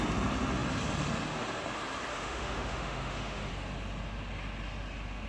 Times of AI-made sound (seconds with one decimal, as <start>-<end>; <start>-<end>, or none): 2.1-3.5